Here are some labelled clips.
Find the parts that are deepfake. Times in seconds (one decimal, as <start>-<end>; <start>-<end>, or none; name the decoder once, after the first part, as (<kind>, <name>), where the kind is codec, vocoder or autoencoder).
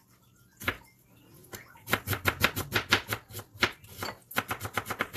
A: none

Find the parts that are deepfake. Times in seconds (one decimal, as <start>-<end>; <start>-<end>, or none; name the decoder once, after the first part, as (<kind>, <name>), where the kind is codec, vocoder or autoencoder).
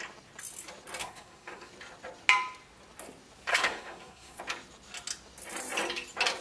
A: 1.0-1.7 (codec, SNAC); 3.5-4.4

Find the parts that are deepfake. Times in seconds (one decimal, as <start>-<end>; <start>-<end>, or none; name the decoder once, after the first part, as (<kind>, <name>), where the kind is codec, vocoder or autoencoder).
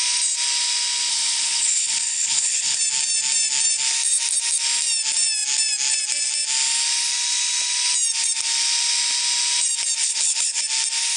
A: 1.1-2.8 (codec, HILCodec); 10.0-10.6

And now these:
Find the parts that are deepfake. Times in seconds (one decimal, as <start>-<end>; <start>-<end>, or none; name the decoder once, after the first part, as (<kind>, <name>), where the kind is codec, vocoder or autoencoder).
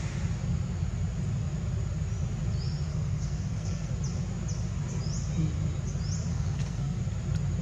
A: 2.9-3.9 (codec, SNAC); 6.3-7.0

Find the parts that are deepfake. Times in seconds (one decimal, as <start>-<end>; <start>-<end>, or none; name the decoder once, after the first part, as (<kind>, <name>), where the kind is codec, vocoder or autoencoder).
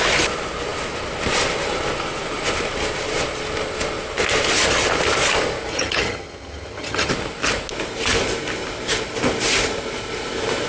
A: 5.7-7.1 (vocoder, HiFi-GAN)